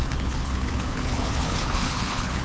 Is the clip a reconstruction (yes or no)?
yes